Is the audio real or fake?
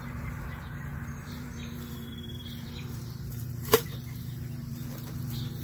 fake